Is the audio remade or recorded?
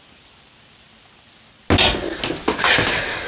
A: recorded